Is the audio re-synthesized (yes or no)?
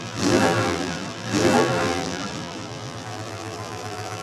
yes